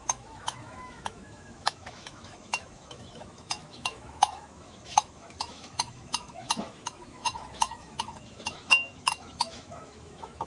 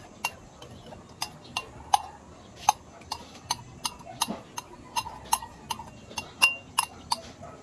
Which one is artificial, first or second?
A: first